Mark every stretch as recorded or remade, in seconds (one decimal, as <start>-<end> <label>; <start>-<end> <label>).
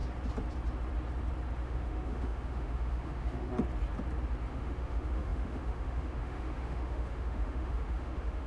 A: 0.0-1.6 recorded; 1.6-3.5 remade; 3.5-4.5 recorded; 4.5-8.5 remade